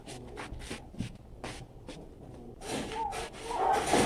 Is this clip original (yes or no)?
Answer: yes